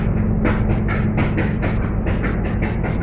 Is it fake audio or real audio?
real